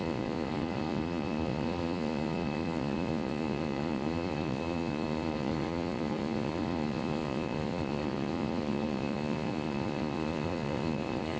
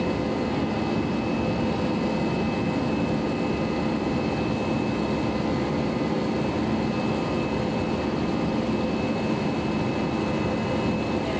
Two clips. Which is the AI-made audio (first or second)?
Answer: first